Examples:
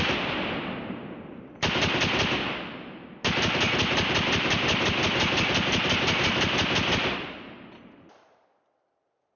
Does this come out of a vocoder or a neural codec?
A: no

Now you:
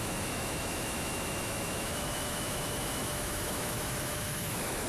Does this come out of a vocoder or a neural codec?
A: yes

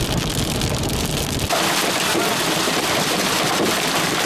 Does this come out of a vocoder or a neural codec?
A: yes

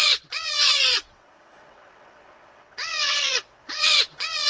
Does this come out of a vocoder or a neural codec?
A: yes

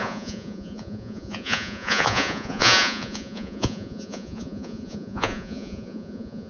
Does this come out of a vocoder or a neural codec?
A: yes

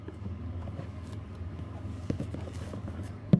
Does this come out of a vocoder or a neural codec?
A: yes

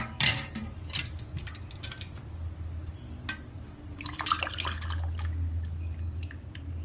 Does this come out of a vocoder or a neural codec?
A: no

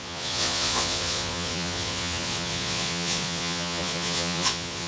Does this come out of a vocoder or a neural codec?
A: yes